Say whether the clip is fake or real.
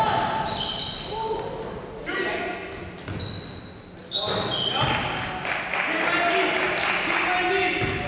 real